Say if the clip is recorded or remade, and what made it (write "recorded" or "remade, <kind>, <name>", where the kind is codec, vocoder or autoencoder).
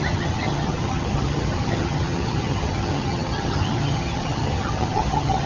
remade, vocoder, HiFi-GAN